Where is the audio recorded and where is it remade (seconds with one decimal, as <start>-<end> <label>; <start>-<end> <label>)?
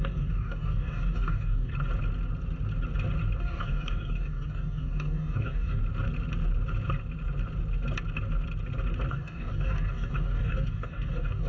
0.0-1.7 remade; 1.7-3.4 recorded; 3.4-5.8 remade; 5.8-9.1 recorded; 9.1-11.5 remade